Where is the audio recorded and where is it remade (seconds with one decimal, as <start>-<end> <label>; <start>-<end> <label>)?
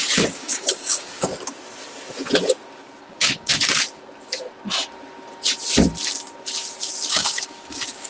0.0-1.3 remade; 1.3-3.0 recorded; 3.0-3.5 remade; 3.5-7.1 recorded; 7.1-8.1 remade